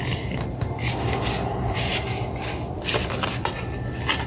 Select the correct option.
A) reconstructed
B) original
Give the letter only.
B